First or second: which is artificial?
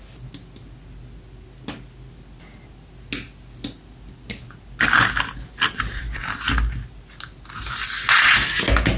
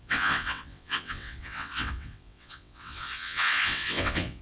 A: second